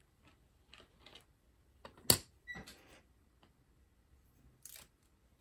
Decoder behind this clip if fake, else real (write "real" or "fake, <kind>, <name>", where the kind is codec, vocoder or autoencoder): real